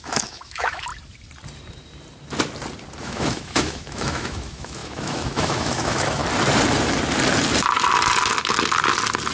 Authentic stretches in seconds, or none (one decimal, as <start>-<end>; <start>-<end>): 0.9-3.0; 6.2-9.3